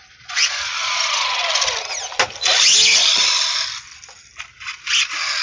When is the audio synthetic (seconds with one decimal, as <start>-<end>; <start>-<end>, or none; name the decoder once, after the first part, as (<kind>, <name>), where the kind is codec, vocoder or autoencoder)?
none